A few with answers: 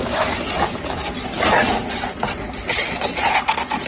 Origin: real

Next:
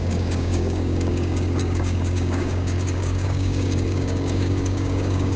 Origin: fake